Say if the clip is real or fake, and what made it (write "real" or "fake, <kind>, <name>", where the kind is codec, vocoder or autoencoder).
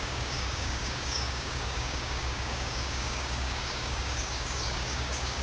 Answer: fake, codec, DAC